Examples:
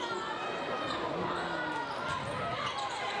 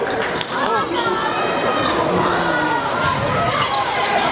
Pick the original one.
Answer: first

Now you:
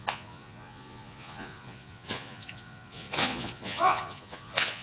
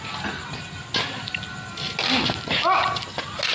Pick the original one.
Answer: second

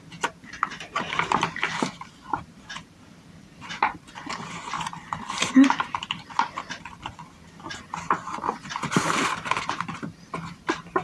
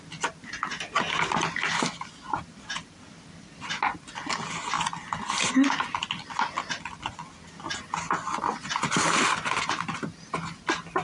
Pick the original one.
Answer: second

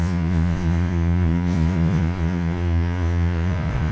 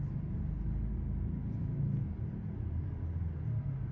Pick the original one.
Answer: second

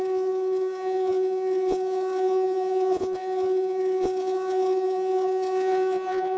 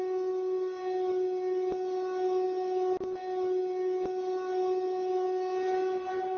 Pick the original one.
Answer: second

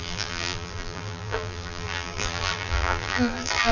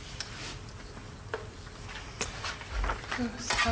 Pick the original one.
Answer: second